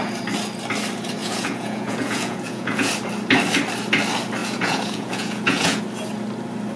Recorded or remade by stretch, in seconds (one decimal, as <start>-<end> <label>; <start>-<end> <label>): 0.0-1.2 recorded; 1.2-2.9 remade; 2.9-4.4 recorded; 4.4-5.8 remade; 5.8-6.8 recorded